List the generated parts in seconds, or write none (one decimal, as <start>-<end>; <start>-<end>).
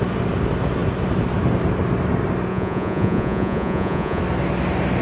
2.5-4.2